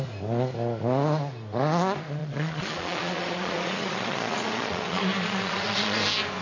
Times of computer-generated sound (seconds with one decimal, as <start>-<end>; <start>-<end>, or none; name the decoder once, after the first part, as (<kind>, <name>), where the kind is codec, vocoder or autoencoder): 2.2-6.0 (vocoder, Vocos)